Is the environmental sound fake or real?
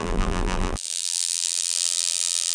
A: fake